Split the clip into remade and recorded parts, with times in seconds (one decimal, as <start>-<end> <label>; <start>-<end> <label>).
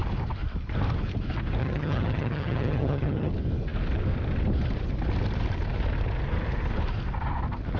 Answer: 0.0-1.6 recorded; 1.6-3.3 remade; 3.3-7.8 recorded